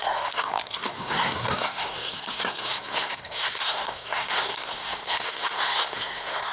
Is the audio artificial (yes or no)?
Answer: yes